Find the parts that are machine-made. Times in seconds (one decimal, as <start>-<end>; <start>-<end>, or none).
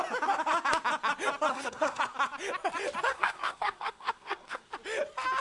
1.5-2.0; 3.1-4.7